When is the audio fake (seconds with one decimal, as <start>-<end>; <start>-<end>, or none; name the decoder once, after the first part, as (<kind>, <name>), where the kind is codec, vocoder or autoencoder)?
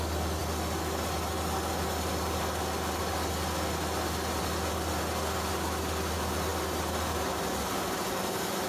none